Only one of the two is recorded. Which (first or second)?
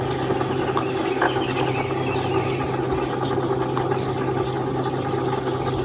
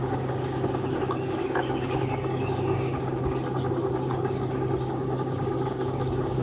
first